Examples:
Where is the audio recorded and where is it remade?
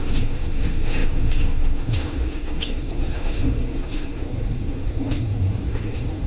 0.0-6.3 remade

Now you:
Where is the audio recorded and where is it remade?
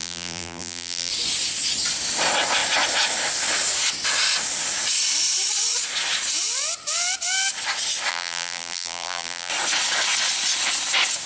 0.0-1.1 remade; 1.1-8.1 recorded; 8.1-9.5 remade; 9.5-11.3 recorded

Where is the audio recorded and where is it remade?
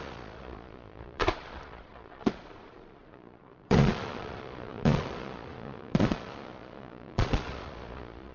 0.0-8.3 remade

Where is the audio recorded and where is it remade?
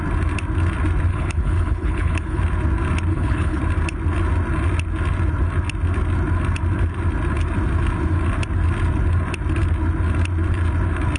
0.0-1.1 recorded; 1.1-2.4 remade; 2.4-3.1 recorded; 3.1-3.6 remade; 3.6-11.2 recorded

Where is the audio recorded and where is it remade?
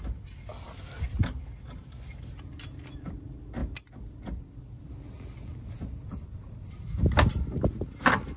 0.0-0.5 recorded; 0.5-1.0 remade; 1.0-3.6 recorded; 3.6-8.4 remade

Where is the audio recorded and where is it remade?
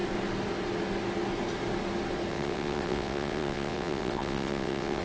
0.0-2.3 recorded; 2.3-5.0 remade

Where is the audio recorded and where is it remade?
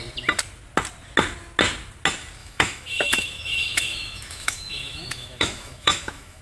0.0-2.4 recorded; 2.4-6.4 remade